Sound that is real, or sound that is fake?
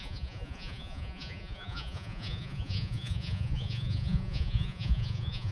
fake